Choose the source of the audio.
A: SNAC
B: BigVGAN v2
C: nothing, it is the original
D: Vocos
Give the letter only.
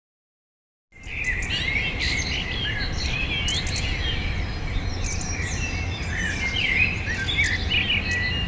C